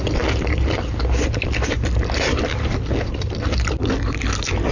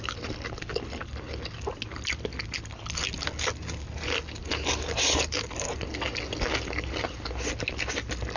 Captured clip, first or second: second